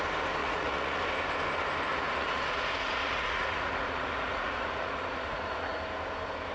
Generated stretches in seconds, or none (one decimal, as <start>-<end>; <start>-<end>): 0.4-1.0; 1.9-5.8